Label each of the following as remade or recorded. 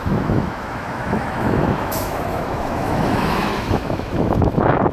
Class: remade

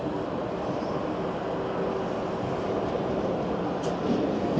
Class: recorded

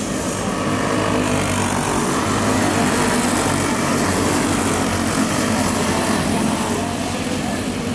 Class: recorded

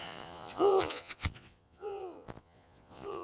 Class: remade